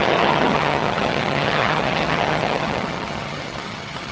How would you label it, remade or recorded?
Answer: remade